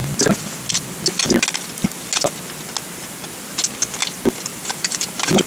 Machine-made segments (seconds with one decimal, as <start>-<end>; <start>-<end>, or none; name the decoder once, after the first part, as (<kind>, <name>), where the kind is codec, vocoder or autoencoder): 4.5-5.5 (vocoder, BigVGAN v2)